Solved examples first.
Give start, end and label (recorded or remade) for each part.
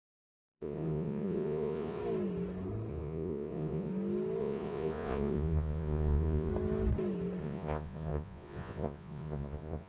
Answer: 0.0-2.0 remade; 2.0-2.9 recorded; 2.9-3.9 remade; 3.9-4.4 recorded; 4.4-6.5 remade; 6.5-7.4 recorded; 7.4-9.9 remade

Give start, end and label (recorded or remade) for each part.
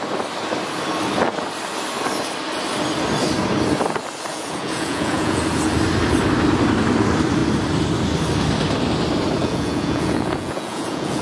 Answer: 0.0-4.3 recorded; 4.3-5.4 remade; 5.4-9.4 recorded; 9.4-11.2 remade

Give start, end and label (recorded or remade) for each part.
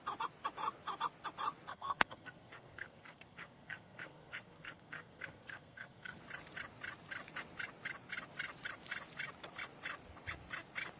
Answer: 0.0-1.7 recorded; 1.7-6.2 remade; 6.2-11.0 recorded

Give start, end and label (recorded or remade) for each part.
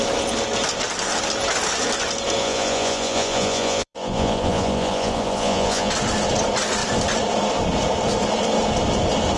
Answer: 0.0-2.4 recorded; 2.4-5.9 remade; 5.9-9.4 recorded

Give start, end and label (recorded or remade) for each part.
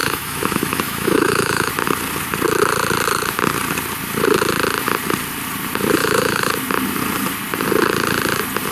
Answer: 0.0-1.7 remade; 1.7-6.0 recorded; 6.0-6.5 remade; 6.5-8.7 recorded